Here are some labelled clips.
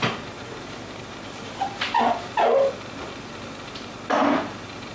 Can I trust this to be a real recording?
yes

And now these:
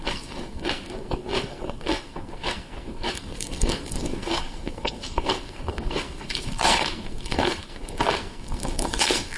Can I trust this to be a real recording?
no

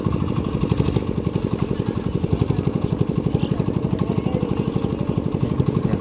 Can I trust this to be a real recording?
yes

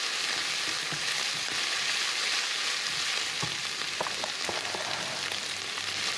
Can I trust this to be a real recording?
yes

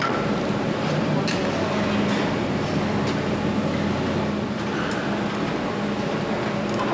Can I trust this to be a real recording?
yes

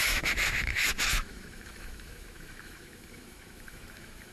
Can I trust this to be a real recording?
no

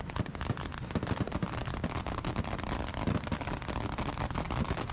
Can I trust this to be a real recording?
yes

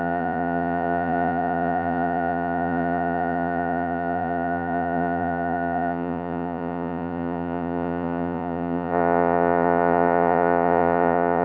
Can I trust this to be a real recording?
no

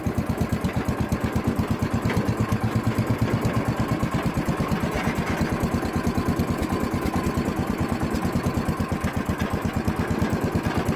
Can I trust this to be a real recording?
yes